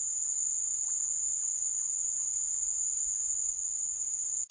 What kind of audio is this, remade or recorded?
remade